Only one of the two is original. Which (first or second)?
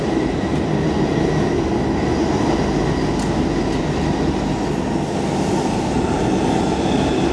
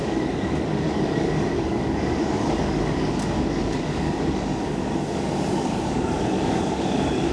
first